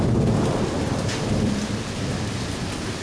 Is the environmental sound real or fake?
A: real